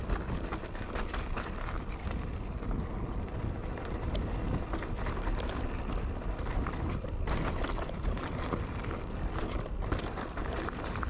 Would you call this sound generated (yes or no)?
no